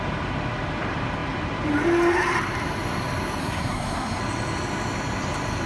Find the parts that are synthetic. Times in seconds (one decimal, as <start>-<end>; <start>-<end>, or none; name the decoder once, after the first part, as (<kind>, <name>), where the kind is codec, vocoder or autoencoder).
3.4-4.2 (codec, SNAC)